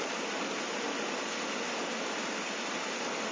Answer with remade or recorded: recorded